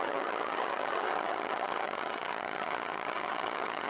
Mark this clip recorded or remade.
remade